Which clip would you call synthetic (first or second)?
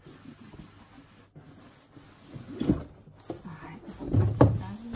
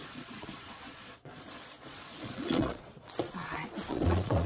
second